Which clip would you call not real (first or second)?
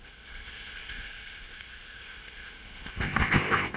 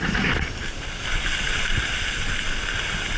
first